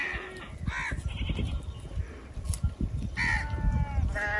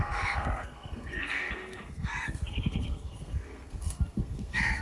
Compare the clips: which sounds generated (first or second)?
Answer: second